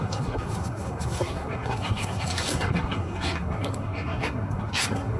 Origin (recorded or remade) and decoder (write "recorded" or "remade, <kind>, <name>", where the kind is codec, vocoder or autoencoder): remade, codec, SNAC